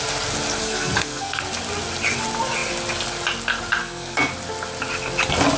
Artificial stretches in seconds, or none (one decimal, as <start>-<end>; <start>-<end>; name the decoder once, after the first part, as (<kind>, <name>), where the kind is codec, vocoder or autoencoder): 0.6-1.4 (codec, SNAC); 3.8-4.3